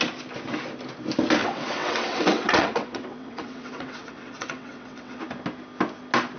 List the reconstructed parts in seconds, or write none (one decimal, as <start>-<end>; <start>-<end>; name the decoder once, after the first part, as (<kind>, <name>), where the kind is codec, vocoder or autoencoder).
1.4-5.2 (vocoder, WaveNeXt)